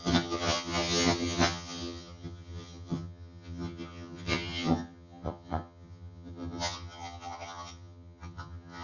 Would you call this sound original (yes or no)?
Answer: no